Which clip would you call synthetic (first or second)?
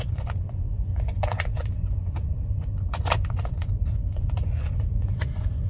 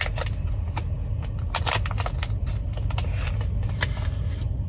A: first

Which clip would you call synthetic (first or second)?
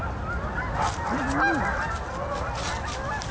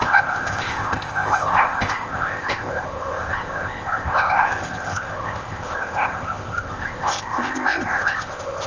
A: second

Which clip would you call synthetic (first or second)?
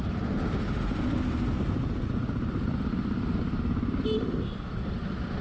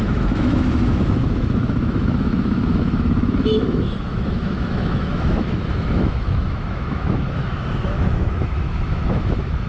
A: second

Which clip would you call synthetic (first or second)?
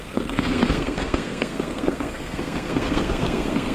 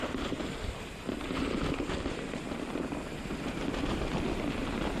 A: first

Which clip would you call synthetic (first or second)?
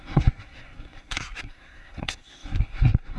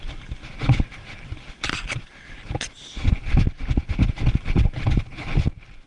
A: first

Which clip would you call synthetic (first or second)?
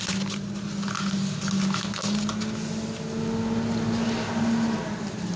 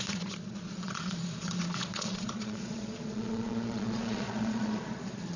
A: second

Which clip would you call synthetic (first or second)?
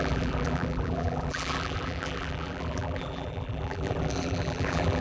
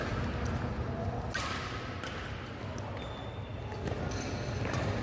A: first